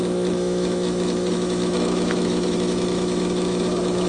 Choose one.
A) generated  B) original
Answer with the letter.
A